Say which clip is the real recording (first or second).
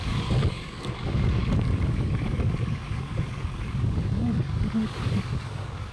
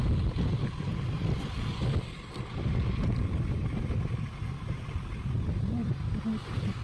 second